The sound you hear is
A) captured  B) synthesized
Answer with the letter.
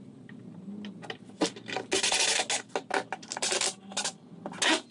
A